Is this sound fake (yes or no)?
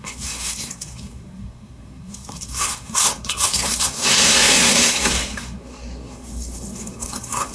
yes